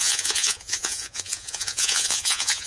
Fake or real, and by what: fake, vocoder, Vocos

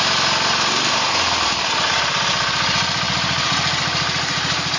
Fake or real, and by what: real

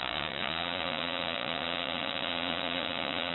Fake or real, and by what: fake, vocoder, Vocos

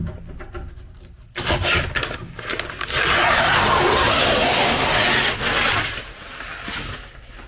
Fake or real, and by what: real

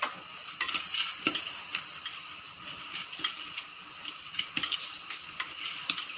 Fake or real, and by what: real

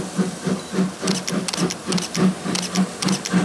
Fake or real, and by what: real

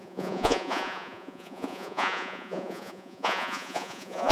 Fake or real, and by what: fake, vocoder, Vocos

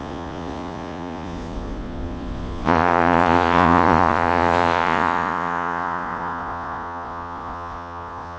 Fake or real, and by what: fake, vocoder, Vocos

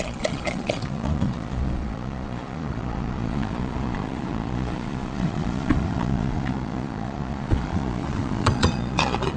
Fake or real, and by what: fake, vocoder, Vocos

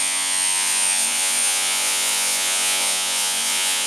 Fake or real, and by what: fake, vocoder, Vocos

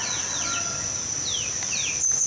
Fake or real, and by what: real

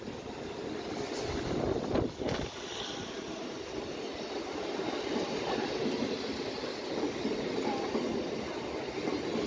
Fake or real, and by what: real